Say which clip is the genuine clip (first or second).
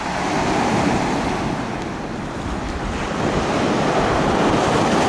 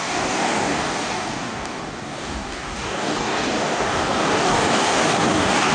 first